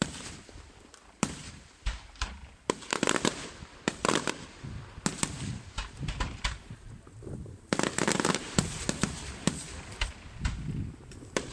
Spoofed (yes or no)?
yes